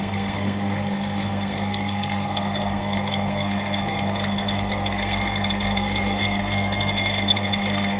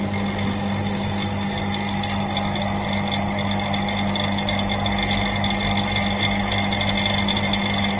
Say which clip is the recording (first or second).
second